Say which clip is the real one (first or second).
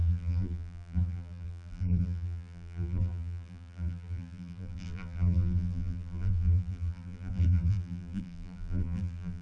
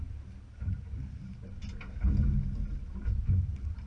second